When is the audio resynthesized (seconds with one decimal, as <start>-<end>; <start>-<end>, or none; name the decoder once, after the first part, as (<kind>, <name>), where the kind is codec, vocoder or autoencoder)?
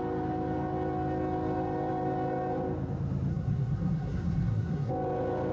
3.3-4.9 (codec, SNAC)